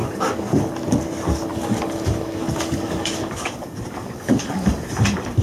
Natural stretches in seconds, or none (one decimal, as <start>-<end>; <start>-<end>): 0.5-1.5; 4.7-5.4